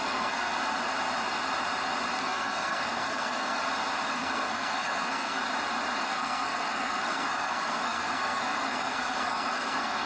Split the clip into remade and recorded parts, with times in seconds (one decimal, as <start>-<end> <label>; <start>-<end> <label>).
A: 0.0-0.5 remade; 0.5-2.2 recorded; 2.2-3.6 remade; 3.6-4.1 recorded; 4.1-5.4 remade; 5.4-6.0 recorded; 6.0-10.1 remade